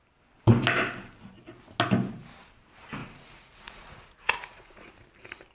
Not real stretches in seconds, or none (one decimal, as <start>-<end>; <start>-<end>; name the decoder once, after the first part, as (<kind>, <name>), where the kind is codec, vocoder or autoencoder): 3.0-4.9 (vocoder, Vocos)